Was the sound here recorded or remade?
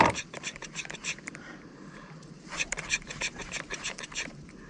remade